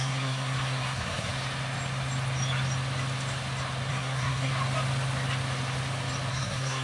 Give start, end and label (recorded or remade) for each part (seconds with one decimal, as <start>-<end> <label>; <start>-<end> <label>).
0.0-1.3 remade; 1.3-3.9 recorded; 3.9-4.5 remade; 4.5-6.3 recorded; 6.3-6.8 remade